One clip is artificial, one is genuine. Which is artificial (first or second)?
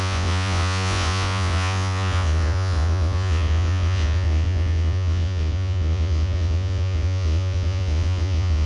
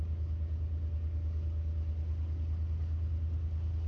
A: first